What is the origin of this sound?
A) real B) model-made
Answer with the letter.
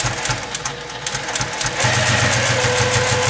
A